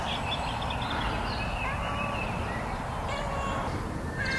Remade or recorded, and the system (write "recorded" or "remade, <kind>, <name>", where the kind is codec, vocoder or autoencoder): recorded